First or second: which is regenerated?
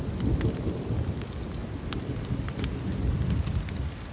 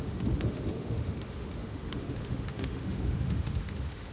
second